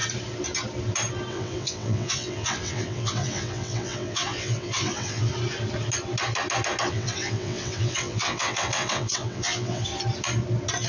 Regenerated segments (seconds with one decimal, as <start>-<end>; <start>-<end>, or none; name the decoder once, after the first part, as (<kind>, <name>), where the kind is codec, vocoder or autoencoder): 1.3-5.3 (vocoder, WaveNeXt); 6.9-9.9

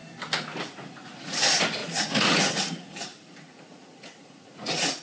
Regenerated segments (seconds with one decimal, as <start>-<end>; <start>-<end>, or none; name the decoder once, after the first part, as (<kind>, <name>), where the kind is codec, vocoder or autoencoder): 0.6-5.0 (vocoder, Vocos)

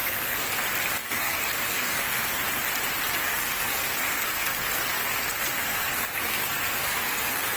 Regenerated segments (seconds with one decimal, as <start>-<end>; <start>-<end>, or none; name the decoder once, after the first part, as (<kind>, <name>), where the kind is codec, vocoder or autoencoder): 0.0-0.5 (codec, SNAC); 1.0-2.6; 3.2-7.6

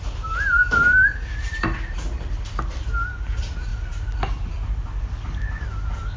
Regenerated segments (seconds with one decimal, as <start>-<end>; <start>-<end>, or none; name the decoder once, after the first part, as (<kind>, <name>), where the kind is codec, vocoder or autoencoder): none

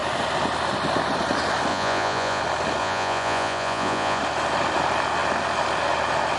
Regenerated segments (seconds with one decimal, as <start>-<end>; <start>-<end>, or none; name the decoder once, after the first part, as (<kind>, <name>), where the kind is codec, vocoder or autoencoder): 1.7-2.4 (vocoder, Vocos); 2.8-4.2

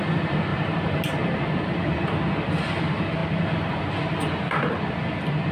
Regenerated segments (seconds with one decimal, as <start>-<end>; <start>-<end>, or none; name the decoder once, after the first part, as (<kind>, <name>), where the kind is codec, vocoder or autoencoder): 0.5-1.0 (vocoder, BigVGAN v2)